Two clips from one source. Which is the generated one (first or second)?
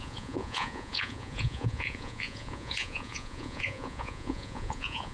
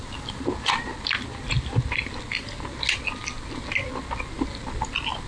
first